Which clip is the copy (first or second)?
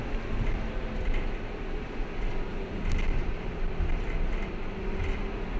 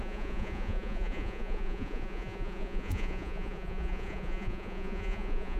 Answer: second